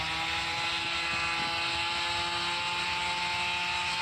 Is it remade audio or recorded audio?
recorded